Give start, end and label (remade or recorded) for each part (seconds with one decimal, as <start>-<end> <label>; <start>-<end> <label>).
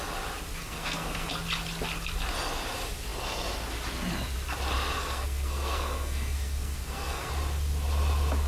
0.0-0.6 recorded; 0.6-1.3 remade; 1.3-5.0 recorded; 5.0-7.3 remade; 7.3-8.5 recorded